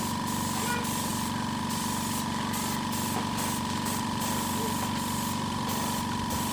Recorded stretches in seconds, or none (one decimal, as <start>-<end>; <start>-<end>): 0.0-6.5